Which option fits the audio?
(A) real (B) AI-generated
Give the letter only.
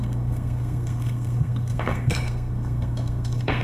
B